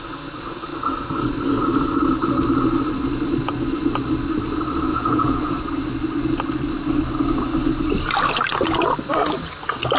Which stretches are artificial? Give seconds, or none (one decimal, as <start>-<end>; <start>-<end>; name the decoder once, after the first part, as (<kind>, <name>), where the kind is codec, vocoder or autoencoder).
4.9-5.6 (vocoder, Vocos)